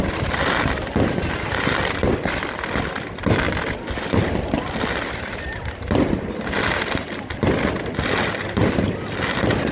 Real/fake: real